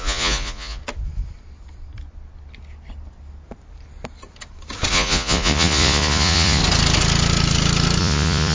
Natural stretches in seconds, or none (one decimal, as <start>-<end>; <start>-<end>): 0.8-4.9; 6.6-8.0